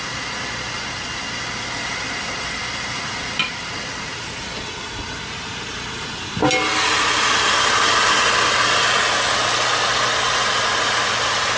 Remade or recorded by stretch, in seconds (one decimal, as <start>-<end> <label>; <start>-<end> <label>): 0.0-11.6 recorded